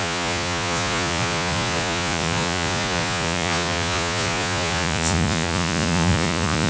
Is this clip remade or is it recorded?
remade